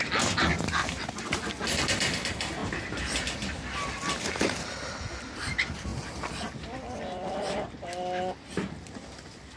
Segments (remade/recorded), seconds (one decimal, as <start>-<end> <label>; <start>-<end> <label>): 0.0-9.6 recorded